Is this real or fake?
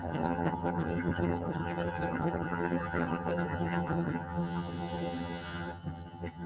fake